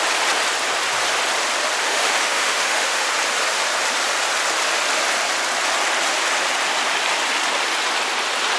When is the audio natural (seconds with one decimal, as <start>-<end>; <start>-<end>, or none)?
0.0-1.8; 3.1-8.6